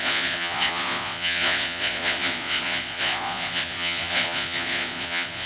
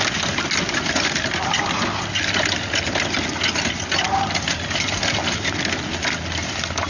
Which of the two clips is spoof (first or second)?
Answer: first